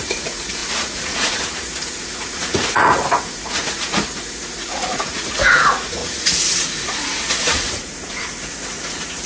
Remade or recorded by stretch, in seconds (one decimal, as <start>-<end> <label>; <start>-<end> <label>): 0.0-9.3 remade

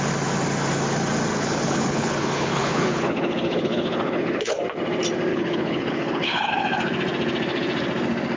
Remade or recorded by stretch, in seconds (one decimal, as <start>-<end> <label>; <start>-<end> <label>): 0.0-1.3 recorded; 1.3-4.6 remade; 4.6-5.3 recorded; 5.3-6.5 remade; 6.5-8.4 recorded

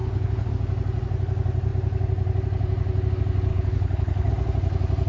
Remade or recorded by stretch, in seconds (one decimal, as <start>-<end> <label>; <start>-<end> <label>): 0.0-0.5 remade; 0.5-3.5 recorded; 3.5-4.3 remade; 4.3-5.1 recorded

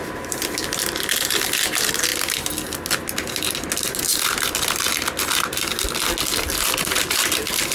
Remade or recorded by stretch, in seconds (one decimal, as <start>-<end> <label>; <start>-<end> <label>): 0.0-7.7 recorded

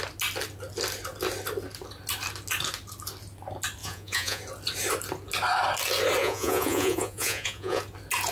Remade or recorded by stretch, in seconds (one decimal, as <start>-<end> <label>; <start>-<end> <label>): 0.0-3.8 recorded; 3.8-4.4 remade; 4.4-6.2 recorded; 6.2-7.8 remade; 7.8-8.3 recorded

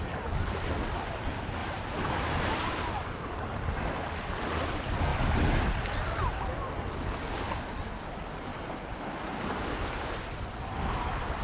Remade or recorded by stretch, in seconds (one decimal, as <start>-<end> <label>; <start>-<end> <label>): 0.0-11.4 recorded